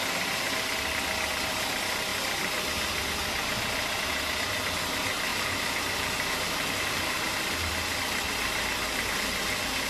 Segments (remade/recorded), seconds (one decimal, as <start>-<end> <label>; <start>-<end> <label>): 0.0-5.3 recorded; 5.3-7.7 remade; 7.7-9.9 recorded